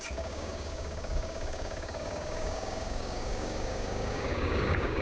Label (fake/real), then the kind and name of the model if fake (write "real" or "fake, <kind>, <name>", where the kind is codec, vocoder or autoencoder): fake, codec, DAC